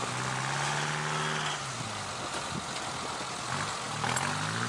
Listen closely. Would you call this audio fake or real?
real